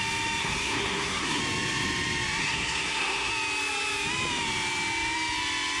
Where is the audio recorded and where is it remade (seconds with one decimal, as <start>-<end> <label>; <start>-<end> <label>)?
0.0-0.4 recorded; 0.4-1.4 remade; 1.4-2.4 recorded; 2.4-3.3 remade; 3.3-5.8 recorded